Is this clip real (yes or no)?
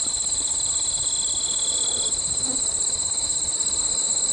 yes